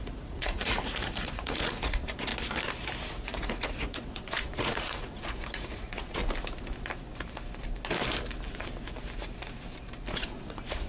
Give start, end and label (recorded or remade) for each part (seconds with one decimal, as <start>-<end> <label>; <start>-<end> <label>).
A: 0.0-2.3 remade; 2.3-3.1 recorded; 3.1-6.2 remade; 6.2-10.1 recorded; 10.1-10.9 remade

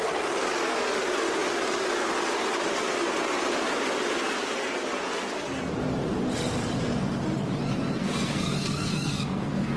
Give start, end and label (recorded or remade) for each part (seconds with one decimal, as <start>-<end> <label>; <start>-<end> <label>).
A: 0.0-8.0 recorded; 8.0-9.8 remade

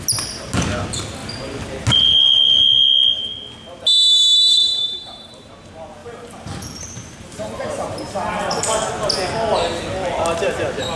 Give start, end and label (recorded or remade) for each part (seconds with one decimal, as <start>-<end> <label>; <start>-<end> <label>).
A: 0.0-4.7 recorded; 4.7-5.5 remade; 5.5-6.0 recorded; 6.0-8.9 remade; 8.9-10.9 recorded

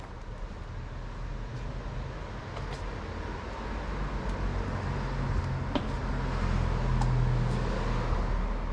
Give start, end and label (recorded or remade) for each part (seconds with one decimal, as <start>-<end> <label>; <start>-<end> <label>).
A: 0.0-8.7 recorded

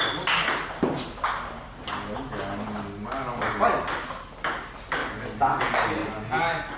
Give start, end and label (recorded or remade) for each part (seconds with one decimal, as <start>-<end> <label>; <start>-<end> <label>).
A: 0.0-6.8 recorded

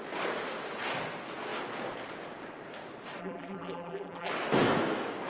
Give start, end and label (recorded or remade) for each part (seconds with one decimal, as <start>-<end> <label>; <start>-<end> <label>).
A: 0.0-3.2 recorded; 3.2-4.3 remade; 4.3-5.3 recorded